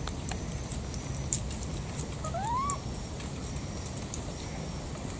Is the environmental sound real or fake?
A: real